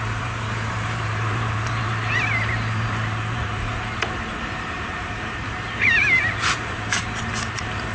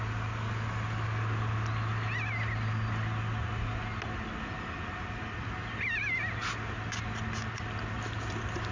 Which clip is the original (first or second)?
second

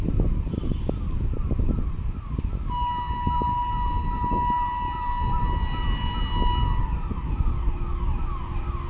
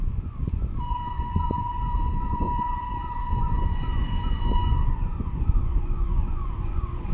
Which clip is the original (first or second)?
first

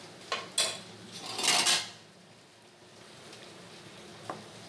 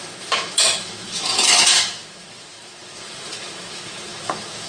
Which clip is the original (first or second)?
first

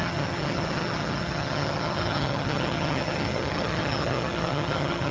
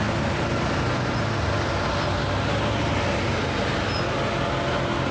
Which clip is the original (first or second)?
second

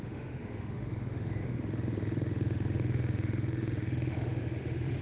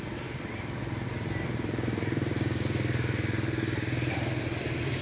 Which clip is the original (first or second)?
second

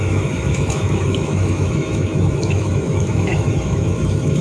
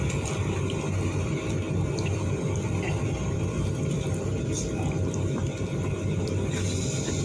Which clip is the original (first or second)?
second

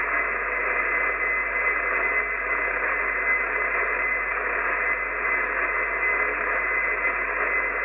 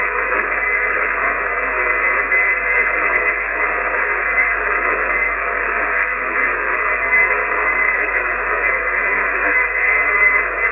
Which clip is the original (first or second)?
first